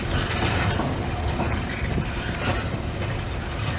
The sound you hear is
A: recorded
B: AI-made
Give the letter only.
A